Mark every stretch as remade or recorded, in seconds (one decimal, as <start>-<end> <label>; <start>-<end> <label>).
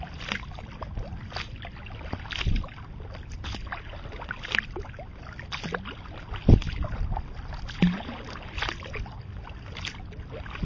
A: 0.0-10.7 recorded